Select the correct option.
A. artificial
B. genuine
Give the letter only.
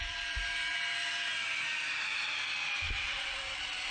A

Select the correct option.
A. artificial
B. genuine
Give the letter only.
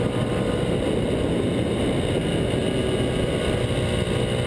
B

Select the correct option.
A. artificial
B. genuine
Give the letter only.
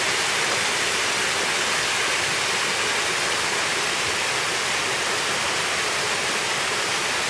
B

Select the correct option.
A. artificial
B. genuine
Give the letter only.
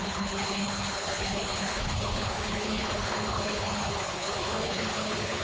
A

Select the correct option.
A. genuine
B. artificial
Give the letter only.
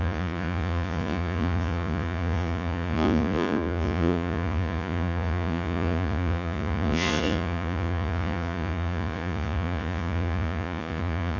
B